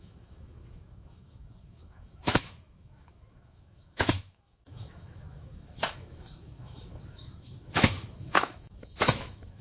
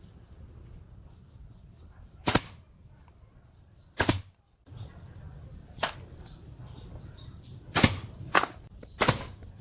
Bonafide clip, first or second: second